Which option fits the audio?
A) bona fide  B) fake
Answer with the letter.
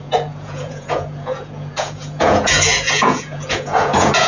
B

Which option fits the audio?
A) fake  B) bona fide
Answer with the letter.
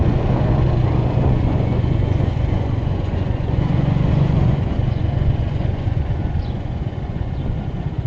A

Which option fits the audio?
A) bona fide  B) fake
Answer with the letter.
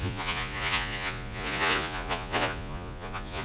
B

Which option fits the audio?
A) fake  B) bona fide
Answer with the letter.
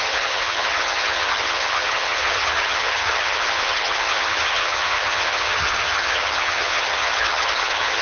A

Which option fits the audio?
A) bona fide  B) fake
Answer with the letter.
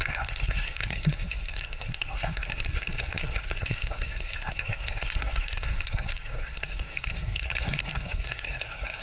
B